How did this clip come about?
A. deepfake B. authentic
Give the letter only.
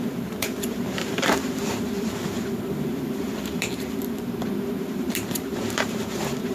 A